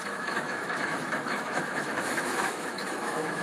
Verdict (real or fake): fake